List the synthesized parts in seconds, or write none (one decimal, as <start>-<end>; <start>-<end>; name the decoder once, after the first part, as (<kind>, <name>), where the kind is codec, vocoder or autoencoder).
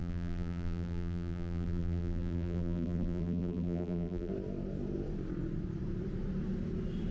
0.0-4.3 (vocoder, BigVGAN v2)